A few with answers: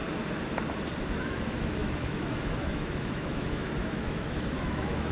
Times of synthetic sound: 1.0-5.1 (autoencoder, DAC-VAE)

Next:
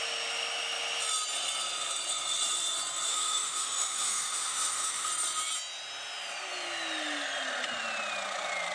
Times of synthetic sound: 3.1-5.1 (autoencoder, DAC-VAE)

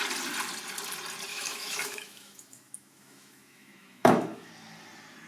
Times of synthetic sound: 1.3-4.5 (autoencoder, DAC-VAE)

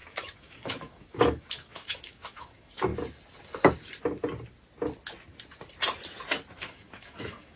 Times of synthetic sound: 0.0-2.9 (autoencoder, DAC-VAE); 6.5-7.6